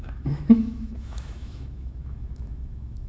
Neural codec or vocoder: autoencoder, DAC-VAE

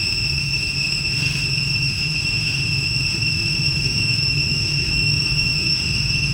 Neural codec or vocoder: autoencoder, DAC-VAE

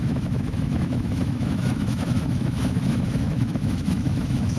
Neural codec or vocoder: autoencoder, DAC-VAE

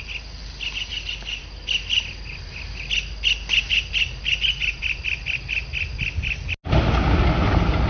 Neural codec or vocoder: none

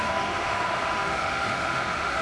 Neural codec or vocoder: autoencoder, DAC-VAE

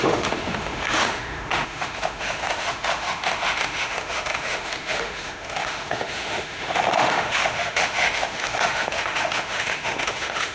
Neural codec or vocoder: autoencoder, DAC-VAE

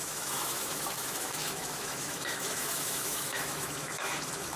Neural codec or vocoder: autoencoder, DAC-VAE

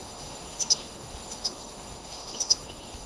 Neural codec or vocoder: autoencoder, DAC-VAE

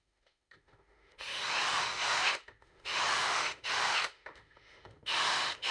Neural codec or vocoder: autoencoder, DAC-VAE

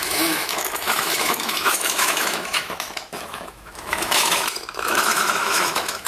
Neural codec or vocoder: autoencoder, DAC-VAE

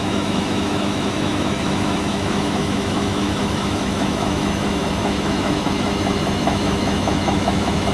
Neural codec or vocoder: autoencoder, DAC-VAE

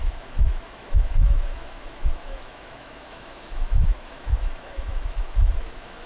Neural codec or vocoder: autoencoder, DAC-VAE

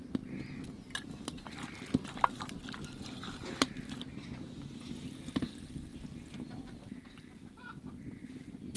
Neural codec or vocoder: none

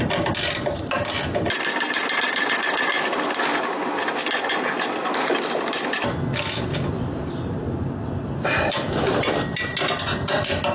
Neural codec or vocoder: none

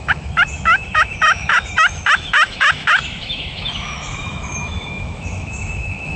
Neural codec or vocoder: autoencoder, DAC-VAE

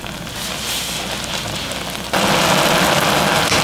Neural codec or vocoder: none